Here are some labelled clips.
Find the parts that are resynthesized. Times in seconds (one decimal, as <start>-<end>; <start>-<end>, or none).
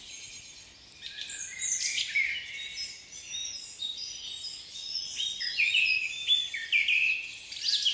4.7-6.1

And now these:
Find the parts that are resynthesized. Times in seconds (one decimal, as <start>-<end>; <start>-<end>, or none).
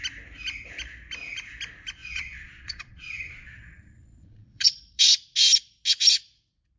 2.0-5.0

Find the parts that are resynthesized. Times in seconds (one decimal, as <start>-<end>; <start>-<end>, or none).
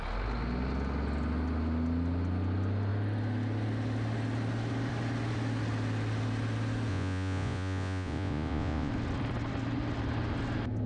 6.9-8.9